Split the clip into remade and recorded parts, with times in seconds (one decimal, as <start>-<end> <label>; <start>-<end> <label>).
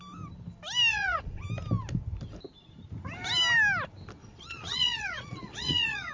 0.0-0.9 recorded; 0.9-1.4 remade; 1.4-4.2 recorded; 4.2-6.1 remade